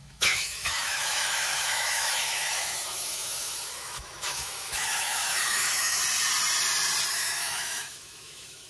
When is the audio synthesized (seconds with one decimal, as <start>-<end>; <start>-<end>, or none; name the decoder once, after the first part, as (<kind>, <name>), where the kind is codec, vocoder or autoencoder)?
0.0-6.0 (autoencoder, DAC-VAE); 7.1-8.7